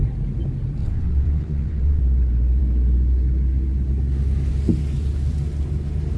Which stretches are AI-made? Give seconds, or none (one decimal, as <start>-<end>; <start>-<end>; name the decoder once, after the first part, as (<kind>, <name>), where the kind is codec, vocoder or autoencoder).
0.8-2.0 (vocoder, WaveNeXt)